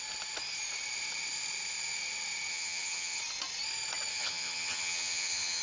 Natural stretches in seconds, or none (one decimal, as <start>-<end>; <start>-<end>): 0.0-2.5; 3.2-4.1